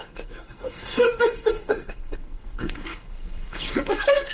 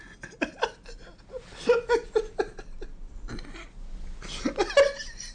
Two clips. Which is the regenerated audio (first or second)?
first